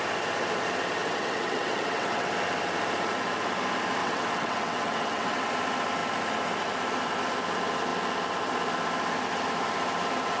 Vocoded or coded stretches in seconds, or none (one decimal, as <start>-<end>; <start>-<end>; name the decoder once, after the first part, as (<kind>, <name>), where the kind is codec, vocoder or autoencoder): 1.0-2.3 (vocoder, WaveNeXt); 4.0-5.5